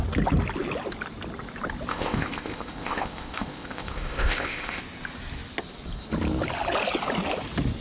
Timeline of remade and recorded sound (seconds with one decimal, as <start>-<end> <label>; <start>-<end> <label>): 0.0-1.9 recorded; 1.9-4.8 remade; 4.8-7.8 recorded